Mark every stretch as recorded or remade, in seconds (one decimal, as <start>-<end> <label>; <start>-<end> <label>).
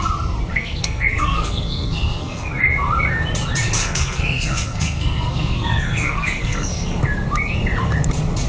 0.0-0.5 recorded; 0.5-2.5 remade; 2.5-3.8 recorded; 3.8-7.0 remade; 7.0-8.5 recorded